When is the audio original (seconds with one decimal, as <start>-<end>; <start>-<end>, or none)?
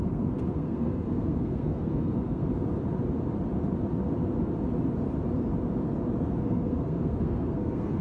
2.4-6.3